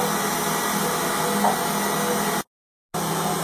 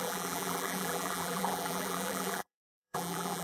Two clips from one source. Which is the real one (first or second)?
first